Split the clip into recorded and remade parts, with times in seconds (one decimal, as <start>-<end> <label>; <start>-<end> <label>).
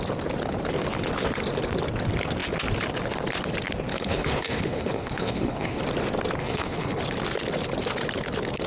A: 0.0-3.9 recorded; 3.9-5.8 remade; 5.8-6.4 recorded; 6.4-7.0 remade; 7.0-8.7 recorded